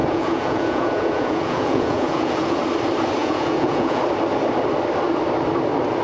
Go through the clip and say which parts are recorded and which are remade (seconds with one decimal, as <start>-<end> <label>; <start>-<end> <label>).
0.0-2.6 remade; 2.6-3.2 recorded; 3.2-4.0 remade; 4.0-6.0 recorded